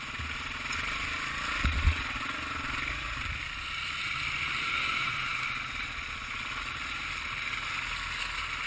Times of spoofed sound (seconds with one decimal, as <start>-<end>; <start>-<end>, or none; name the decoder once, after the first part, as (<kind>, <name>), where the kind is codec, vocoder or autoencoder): none